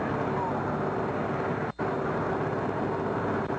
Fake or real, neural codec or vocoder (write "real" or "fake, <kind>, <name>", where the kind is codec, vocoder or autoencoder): real